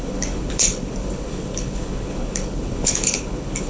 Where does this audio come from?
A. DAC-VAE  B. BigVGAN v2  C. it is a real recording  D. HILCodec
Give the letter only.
D